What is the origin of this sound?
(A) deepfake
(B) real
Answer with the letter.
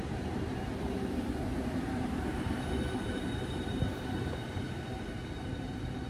A